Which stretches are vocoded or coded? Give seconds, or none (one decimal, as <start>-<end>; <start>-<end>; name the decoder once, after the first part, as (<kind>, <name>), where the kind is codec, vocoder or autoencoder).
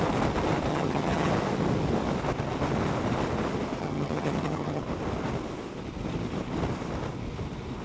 0.7-1.3 (vocoder, HiFi-GAN); 3.8-4.8